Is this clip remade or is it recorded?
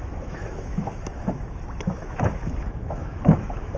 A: remade